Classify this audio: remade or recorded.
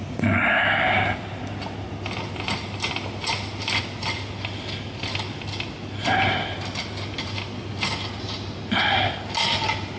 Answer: recorded